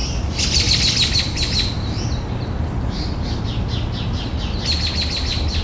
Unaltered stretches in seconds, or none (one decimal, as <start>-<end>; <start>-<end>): 0.0-5.6